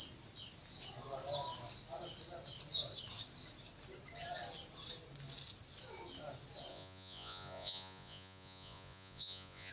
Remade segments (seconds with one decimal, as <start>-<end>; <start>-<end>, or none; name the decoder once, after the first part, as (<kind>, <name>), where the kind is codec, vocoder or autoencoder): 6.7-9.7 (vocoder, Vocos)